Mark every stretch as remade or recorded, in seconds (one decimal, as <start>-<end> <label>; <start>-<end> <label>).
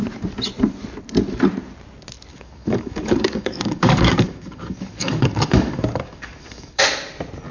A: 0.0-2.3 recorded; 2.3-6.8 remade; 6.8-7.5 recorded